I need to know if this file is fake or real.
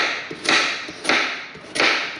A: fake